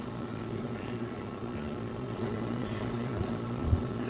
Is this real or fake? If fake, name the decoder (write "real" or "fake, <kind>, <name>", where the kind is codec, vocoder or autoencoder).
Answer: fake, vocoder, Vocos